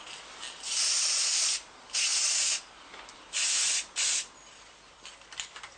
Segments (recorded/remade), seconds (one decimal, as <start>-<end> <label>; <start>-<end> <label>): 0.0-5.8 recorded